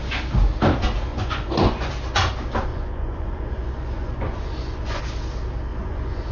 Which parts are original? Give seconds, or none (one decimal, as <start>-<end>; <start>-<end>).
0.0-1.1; 1.9-2.7; 5.0-5.7